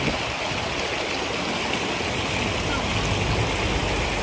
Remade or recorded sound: recorded